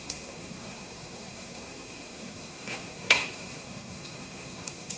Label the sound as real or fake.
fake